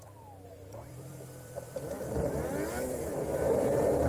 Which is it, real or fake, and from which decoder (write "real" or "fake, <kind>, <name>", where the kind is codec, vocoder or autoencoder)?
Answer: fake, vocoder, BigVGAN v2